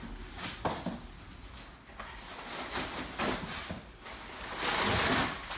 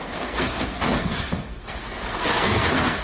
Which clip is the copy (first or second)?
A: second